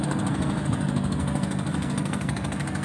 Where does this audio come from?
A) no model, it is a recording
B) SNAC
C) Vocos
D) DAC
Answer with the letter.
B